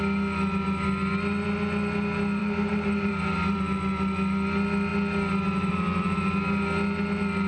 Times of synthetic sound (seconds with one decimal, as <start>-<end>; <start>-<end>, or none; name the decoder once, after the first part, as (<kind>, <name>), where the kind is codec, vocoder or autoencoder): 2.4-3.6 (vocoder, BigVGAN v2)